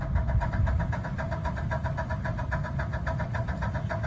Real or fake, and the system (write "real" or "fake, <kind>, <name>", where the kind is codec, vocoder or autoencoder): real